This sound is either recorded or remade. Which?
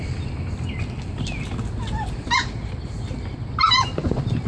recorded